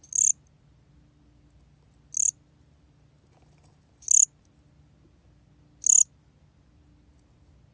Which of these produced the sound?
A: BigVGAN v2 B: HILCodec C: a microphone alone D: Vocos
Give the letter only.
C